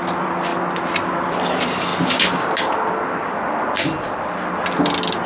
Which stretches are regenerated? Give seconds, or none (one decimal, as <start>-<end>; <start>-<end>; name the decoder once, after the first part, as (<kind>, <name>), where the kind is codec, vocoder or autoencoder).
0.0-0.5 (vocoder, BigVGAN v2); 1.3-1.9